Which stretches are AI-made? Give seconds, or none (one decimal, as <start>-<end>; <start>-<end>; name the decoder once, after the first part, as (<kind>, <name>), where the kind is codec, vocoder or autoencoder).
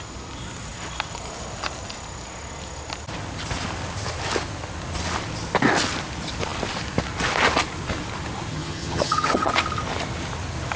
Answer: 8.5-9.5 (vocoder, HiFi-GAN)